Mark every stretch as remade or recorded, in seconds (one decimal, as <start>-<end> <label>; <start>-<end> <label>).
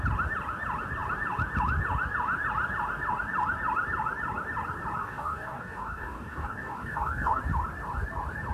0.0-5.0 recorded; 5.0-7.4 remade; 7.4-8.5 recorded